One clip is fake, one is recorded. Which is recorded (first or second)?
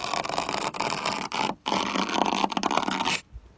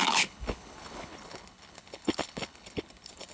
first